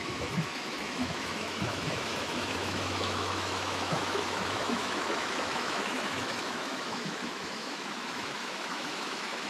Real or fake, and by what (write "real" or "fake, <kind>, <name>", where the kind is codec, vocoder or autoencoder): fake, autoencoder, DAC-VAE